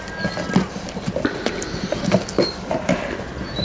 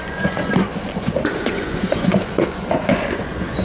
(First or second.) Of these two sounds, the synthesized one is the second